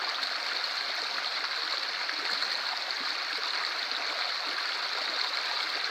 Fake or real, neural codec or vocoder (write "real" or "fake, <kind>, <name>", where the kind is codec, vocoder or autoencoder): real